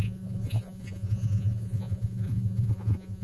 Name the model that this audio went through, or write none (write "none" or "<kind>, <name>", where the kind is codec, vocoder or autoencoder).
vocoder, Vocos